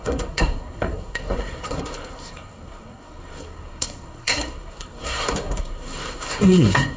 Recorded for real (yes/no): no